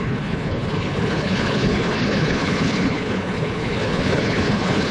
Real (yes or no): no